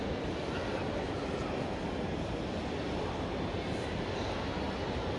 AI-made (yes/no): no